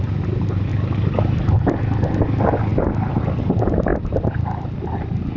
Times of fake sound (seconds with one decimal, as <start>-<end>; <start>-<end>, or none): none